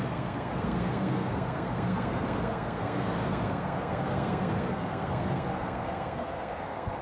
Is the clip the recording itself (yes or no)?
no